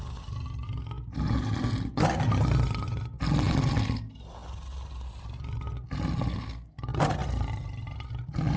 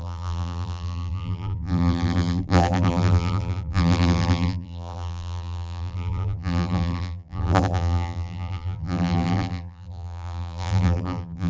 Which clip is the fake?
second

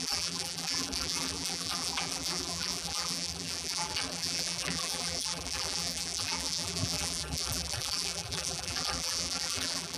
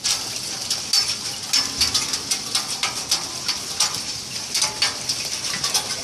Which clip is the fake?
first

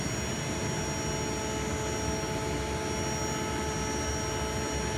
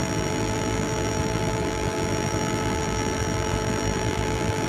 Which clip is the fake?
second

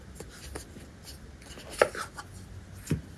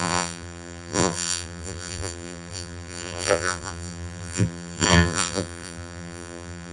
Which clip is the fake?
second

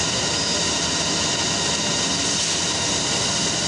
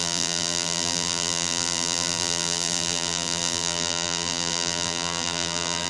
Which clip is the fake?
second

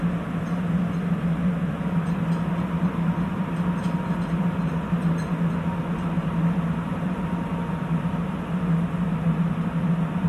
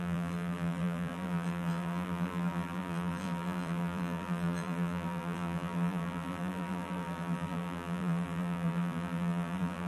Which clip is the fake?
second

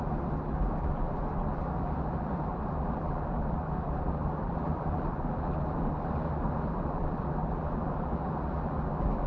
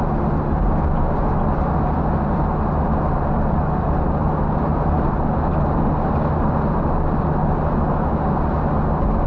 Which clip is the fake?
first